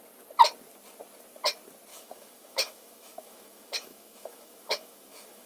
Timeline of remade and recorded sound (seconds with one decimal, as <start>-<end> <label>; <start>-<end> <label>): 0.0-1.9 recorded; 1.9-5.5 remade